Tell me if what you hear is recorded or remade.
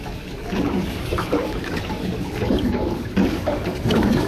remade